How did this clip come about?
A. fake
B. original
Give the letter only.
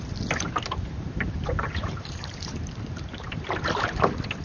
A